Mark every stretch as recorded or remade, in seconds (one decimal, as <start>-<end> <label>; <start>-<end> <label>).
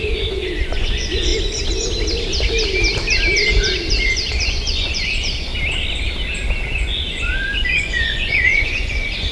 0.0-1.3 remade; 1.3-4.3 recorded; 4.3-5.5 remade; 5.5-6.7 recorded; 6.7-9.3 remade